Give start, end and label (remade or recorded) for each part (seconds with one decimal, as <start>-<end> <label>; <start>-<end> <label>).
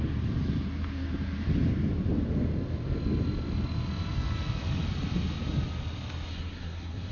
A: 0.0-6.3 recorded; 6.3-7.1 remade